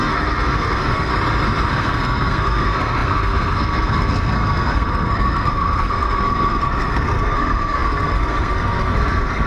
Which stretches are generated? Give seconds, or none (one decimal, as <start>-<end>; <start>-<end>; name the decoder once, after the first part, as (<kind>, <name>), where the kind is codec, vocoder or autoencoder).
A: 0.0-1.1 (codec, SNAC); 1.7-9.5